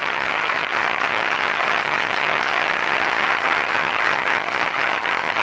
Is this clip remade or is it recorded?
remade